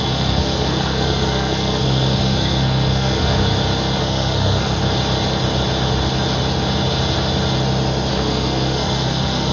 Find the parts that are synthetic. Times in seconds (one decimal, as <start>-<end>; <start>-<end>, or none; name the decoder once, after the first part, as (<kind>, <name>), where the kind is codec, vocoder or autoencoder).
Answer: 0.0-3.5 (codec, SNAC); 4.0-4.8; 8.1-9.5